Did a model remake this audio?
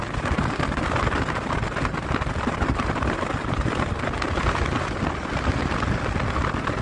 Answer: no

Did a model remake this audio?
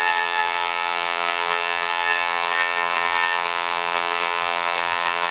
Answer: yes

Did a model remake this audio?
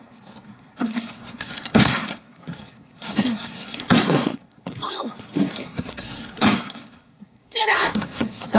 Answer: yes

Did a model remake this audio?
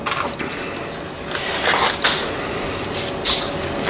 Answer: no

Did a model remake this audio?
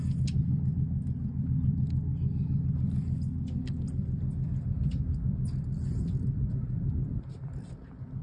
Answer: no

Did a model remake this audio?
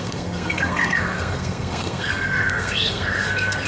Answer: yes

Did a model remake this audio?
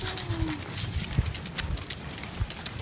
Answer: no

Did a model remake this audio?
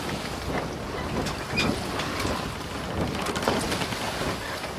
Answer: no